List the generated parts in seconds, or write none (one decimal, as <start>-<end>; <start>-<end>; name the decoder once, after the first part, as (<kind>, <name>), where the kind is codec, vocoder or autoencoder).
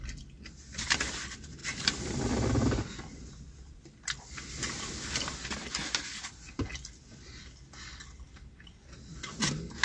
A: none